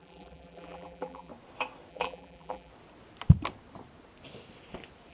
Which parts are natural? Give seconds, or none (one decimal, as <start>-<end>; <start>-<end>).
1.3-1.9; 2.7-5.1